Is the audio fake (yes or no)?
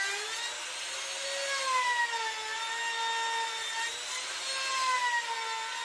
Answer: no